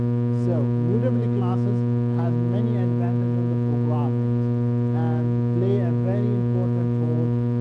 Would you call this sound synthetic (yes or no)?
no